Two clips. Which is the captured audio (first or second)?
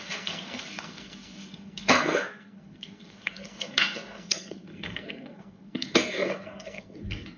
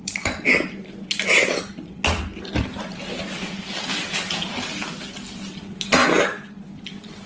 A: second